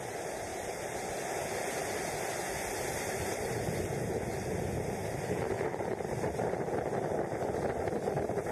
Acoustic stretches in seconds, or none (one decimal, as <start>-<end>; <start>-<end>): 0.0-0.5; 1.3-8.5